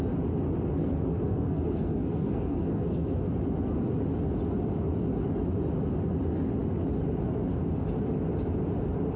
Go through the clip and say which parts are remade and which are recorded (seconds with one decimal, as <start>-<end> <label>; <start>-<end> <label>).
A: 0.0-0.8 recorded; 0.8-3.2 remade; 3.2-9.2 recorded